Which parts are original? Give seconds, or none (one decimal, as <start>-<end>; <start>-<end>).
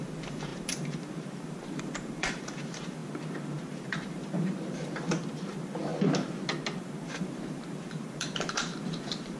5.9-6.8